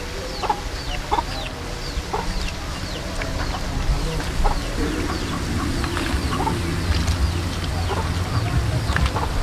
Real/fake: real